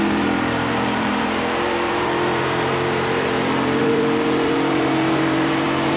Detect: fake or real fake